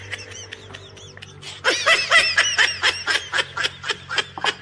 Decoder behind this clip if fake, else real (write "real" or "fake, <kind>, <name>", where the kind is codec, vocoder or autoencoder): real